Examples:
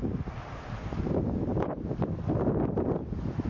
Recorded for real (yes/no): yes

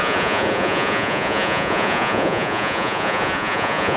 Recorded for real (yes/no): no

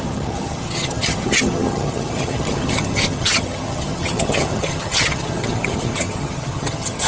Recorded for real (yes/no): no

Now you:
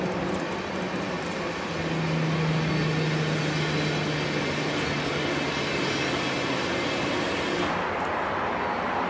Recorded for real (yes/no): yes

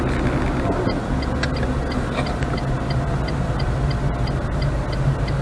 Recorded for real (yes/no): yes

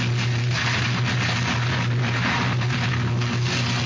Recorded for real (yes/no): yes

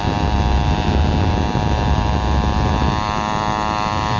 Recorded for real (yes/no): yes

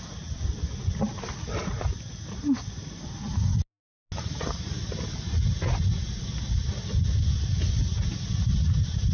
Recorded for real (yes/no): yes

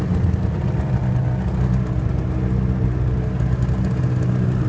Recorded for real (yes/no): yes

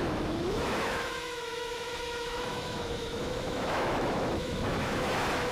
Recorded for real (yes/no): no